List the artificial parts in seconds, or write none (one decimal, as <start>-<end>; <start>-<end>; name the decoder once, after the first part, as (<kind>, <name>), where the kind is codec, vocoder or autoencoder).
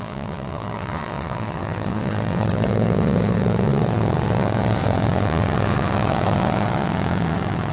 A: 0.0-7.7 (vocoder, WaveNeXt)